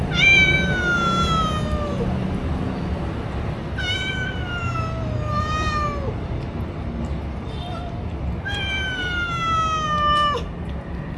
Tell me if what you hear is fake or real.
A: real